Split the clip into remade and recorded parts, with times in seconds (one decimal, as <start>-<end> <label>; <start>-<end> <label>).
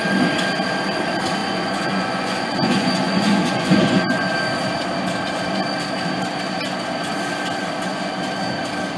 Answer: 0.0-1.4 recorded; 1.4-4.3 remade; 4.3-9.0 recorded